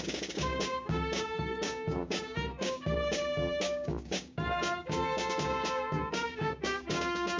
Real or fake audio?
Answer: fake